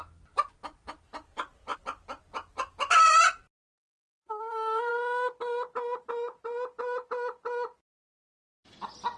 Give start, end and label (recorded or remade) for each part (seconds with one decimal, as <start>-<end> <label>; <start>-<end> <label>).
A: 0.0-4.2 recorded; 4.2-4.9 remade; 4.9-9.2 recorded